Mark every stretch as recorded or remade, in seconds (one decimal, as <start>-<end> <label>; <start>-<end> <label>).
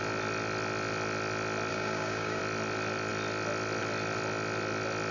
0.0-1.7 recorded; 1.7-2.4 remade; 2.4-5.1 recorded